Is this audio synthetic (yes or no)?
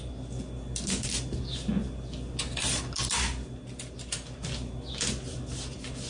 no